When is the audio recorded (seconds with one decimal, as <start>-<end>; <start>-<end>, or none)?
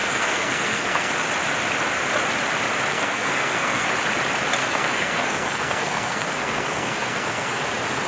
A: 1.1-2.9; 3.9-4.6; 7.6-8.1